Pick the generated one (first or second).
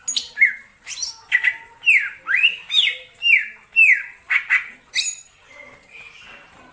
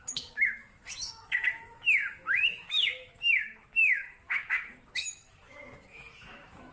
second